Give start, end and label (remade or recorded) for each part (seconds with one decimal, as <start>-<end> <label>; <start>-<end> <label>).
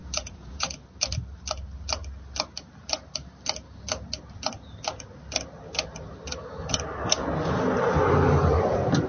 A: 0.0-0.8 remade; 0.8-9.1 recorded